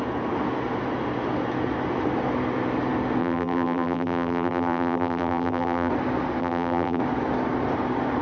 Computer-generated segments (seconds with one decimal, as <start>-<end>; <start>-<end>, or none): 3.2-5.9; 6.4-7.0